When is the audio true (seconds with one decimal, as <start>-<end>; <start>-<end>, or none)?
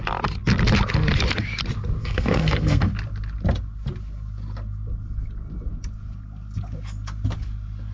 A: 0.0-2.0; 2.9-7.9